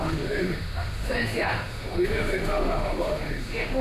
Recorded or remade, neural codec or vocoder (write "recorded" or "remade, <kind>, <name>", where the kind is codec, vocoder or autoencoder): remade, autoencoder, DAC-VAE